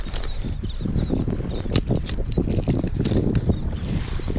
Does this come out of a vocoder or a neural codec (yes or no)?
no